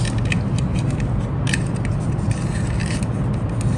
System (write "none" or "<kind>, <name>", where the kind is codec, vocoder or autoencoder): none